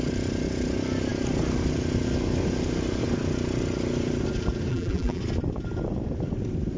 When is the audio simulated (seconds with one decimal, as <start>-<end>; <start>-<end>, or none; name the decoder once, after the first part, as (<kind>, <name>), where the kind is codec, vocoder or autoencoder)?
4.7-5.2 (vocoder, BigVGAN v2)